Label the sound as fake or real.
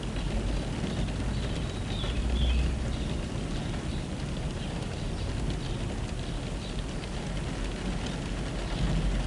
real